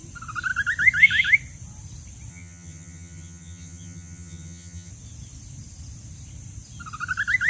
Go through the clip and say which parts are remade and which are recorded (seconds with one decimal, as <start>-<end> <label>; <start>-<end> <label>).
0.0-2.3 recorded; 2.3-4.9 remade; 4.9-7.5 recorded